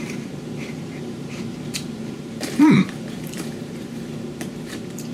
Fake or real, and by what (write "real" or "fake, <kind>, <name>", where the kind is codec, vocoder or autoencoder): fake, vocoder, BigVGAN v2